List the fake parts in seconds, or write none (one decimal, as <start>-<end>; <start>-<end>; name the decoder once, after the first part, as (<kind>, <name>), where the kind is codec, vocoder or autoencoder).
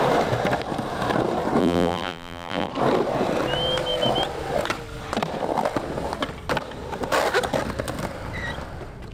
1.6-2.7 (vocoder, BigVGAN v2)